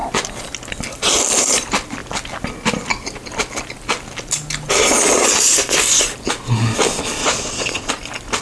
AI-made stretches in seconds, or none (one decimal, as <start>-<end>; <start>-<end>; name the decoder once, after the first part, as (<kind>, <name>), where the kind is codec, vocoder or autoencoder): 7.2-7.9 (vocoder, Vocos)